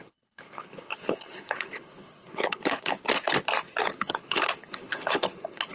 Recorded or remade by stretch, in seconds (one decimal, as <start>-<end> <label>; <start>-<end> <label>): 0.0-3.0 remade; 3.0-3.8 recorded; 3.8-5.7 remade